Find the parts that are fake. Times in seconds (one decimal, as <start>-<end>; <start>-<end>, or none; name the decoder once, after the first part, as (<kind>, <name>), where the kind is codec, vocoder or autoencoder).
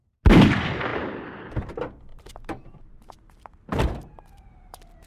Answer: 2.1-5.1 (vocoder, BigVGAN v2)